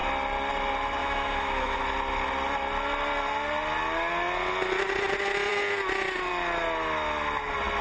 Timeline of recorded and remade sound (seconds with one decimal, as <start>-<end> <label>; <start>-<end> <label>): 0.0-1.0 recorded; 1.0-1.8 remade; 1.8-7.8 recorded